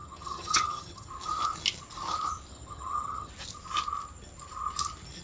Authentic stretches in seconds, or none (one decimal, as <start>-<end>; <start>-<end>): 1.1-2.5; 3.3-5.2